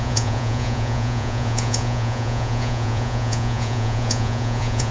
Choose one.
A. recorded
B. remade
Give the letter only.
B